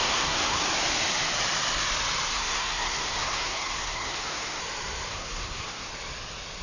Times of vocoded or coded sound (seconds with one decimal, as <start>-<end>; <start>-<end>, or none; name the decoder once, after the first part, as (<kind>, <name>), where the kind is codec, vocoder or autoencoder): 0.0-0.6 (codec, SNAC); 2.3-4.6; 5.1-5.9